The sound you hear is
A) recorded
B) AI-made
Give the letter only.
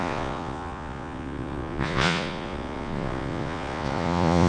B